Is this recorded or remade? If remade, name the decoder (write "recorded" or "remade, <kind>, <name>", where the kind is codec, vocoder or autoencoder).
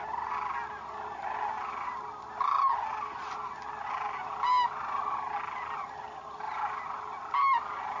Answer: recorded